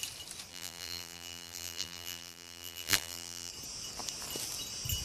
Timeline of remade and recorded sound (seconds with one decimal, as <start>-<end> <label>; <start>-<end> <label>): 0.0-0.5 recorded; 0.5-3.5 remade; 3.5-5.0 recorded